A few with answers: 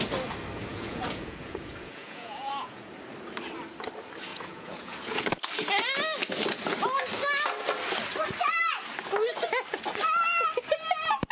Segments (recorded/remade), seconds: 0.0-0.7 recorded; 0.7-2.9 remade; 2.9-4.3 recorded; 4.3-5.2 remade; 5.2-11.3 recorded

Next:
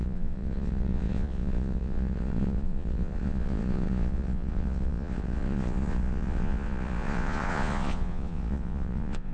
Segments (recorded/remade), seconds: 0.0-9.3 remade

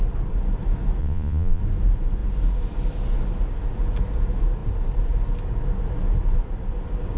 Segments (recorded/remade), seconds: 0.0-1.0 recorded; 1.0-1.6 remade; 1.6-7.2 recorded

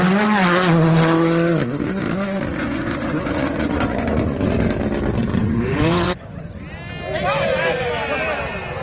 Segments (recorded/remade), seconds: 0.0-2.5 recorded; 2.5-4.5 remade; 4.5-5.3 recorded; 5.3-6.6 remade; 6.6-8.8 recorded

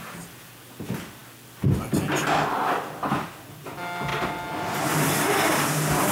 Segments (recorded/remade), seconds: 0.0-6.1 recorded

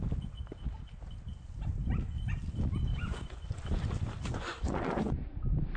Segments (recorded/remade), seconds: 0.0-2.9 recorded; 2.9-3.6 remade; 3.6-4.3 recorded; 4.3-5.3 remade; 5.3-5.8 recorded

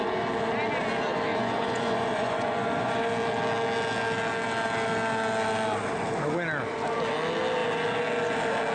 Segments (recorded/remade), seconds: 0.0-1.3 recorded; 1.3-2.9 remade; 2.9-8.7 recorded

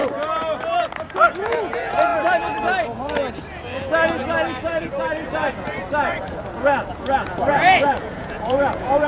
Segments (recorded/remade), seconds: 0.0-1.1 recorded; 1.1-2.1 remade; 2.1-6.9 recorded; 6.9-9.1 remade